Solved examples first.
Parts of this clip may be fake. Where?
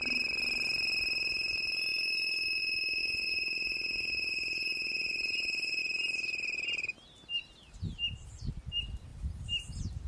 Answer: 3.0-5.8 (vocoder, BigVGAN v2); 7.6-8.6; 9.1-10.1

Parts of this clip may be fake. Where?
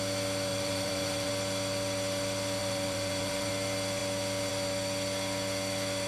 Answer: 0.5-1.3 (vocoder, BigVGAN v2); 2.6-3.5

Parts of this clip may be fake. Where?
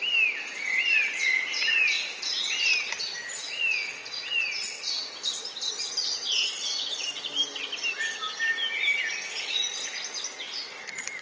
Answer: none